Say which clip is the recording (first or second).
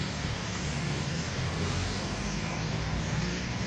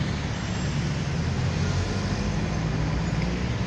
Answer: second